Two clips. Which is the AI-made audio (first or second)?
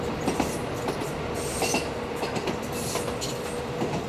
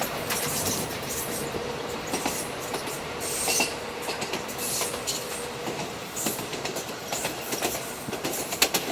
second